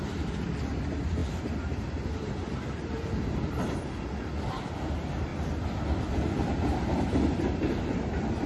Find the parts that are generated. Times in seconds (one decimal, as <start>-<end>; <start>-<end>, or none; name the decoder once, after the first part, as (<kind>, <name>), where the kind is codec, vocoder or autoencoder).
none